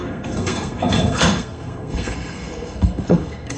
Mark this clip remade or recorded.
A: remade